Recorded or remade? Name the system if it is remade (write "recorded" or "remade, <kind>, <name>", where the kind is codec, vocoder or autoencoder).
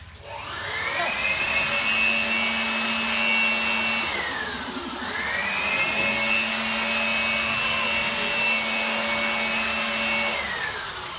recorded